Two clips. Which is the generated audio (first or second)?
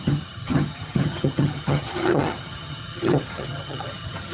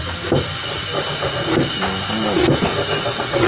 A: first